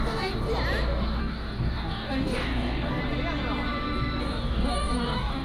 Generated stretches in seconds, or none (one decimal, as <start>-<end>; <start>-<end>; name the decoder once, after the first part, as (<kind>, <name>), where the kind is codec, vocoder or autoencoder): 0.0-0.5 (codec, DAC); 1.2-3.0; 4.2-5.4